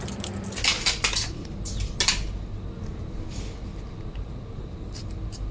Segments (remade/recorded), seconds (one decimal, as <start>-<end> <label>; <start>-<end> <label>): 0.0-5.5 recorded